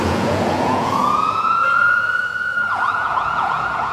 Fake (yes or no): yes